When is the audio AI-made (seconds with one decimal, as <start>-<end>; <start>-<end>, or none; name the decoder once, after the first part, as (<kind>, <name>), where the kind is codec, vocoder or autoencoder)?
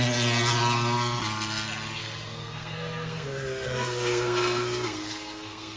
2.0-5.8 (codec, SNAC)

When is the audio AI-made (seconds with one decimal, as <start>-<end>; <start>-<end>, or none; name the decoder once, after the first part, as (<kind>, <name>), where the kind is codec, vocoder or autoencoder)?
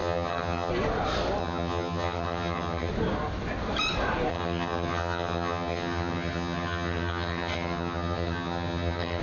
0.0-0.7 (vocoder, HiFi-GAN); 1.4-2.9; 4.3-9.2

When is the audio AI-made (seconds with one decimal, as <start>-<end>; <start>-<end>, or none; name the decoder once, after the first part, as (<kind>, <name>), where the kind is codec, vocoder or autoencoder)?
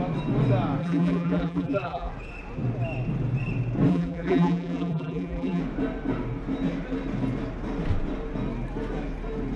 0.8-2.1 (vocoder, BigVGAN v2); 3.9-5.6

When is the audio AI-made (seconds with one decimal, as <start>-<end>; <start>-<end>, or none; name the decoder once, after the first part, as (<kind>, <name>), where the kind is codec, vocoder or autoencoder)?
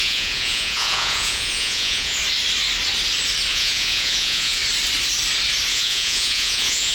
0.0-2.2 (vocoder, Vocos); 3.5-4.6; 5.7-6.9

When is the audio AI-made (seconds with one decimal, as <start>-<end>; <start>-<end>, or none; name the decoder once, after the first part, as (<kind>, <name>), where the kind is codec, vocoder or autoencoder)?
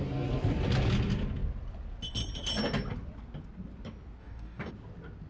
4.2-4.7 (codec, DAC)